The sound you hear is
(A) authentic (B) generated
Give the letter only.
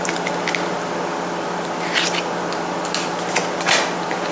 A